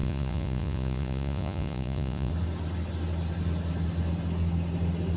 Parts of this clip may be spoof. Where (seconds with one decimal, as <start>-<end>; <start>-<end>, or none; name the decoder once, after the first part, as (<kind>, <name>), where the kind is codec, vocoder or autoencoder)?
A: 0.0-2.3 (vocoder, Vocos)

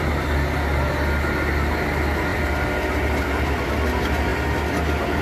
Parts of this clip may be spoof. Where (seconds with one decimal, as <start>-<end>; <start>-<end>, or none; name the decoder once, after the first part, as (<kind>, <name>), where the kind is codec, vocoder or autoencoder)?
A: 2.3-3.3 (vocoder, BigVGAN v2); 4.3-5.2

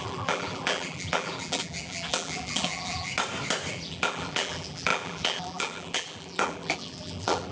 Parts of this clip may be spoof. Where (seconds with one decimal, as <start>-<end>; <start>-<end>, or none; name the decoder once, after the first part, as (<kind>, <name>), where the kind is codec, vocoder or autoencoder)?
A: 0.0-3.1 (vocoder, BigVGAN v2); 3.7-7.5

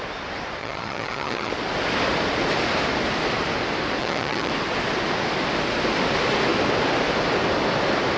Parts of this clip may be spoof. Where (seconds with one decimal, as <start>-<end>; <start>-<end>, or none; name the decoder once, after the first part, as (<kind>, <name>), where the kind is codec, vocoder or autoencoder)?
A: 0.6-1.5 (vocoder, HiFi-GAN); 4.0-4.5

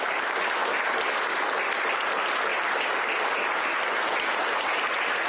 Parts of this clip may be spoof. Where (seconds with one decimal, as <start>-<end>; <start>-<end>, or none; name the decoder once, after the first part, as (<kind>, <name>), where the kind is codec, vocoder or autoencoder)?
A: none

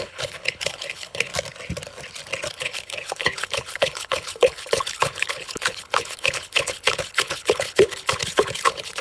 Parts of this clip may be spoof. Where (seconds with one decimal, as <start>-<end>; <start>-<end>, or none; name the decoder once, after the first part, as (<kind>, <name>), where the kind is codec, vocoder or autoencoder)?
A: 0.0-1.3 (codec, HILCodec); 2.5-9.0

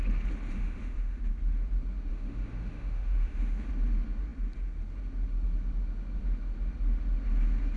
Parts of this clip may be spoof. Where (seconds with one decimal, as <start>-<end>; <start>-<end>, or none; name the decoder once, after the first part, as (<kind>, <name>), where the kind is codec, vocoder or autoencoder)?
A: 0.5-1.2 (autoencoder, DAC-VAE); 2.1-3.7